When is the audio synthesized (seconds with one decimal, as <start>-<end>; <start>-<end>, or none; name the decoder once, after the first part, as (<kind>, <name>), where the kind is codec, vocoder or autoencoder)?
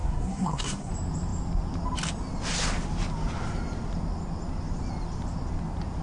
0.0-0.9 (codec, SNAC)